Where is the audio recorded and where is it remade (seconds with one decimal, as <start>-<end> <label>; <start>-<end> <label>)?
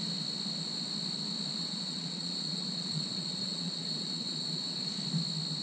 0.0-1.6 recorded; 1.6-5.0 remade; 5.0-5.6 recorded